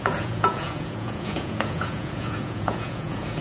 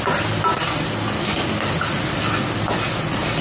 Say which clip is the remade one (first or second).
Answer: first